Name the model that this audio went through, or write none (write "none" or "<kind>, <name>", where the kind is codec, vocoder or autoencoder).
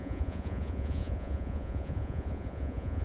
vocoder, Vocos